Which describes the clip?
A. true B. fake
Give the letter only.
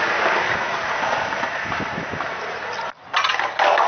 A